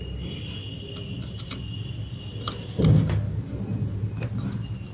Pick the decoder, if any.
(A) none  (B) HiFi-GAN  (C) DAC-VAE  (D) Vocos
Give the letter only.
A